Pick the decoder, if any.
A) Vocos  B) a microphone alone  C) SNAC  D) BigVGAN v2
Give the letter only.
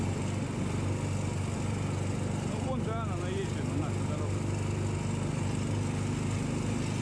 B